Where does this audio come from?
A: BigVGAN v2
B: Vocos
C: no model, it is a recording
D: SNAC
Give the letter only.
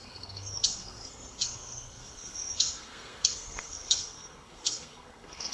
D